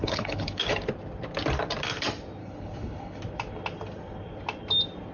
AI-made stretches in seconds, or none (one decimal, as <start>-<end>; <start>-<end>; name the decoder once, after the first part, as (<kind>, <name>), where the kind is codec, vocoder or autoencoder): 0.0-0.6 (codec, HILCodec); 2.4-3.2